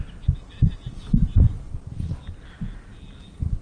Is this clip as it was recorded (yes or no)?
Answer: yes